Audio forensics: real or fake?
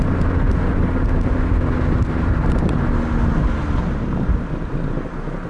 real